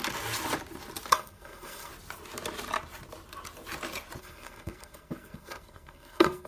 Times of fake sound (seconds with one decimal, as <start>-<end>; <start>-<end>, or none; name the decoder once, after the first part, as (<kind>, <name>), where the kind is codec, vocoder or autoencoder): 1.1-1.9 (codec, SNAC); 4.2-6.5